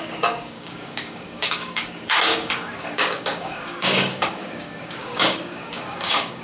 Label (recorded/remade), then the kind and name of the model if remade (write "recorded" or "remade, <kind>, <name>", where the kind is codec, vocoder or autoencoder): remade, codec, DAC